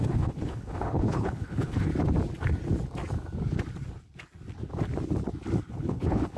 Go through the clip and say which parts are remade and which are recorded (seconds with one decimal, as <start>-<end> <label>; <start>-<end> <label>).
0.0-1.9 remade; 1.9-5.7 recorded; 5.7-6.4 remade